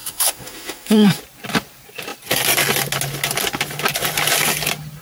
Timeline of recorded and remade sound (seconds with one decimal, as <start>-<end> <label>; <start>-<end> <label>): 0.0-1.2 remade; 1.2-5.0 recorded